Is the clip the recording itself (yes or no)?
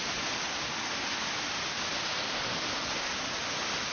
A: yes